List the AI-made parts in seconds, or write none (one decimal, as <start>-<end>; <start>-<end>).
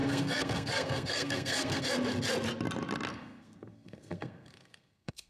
0.0-1.8; 3.1-5.3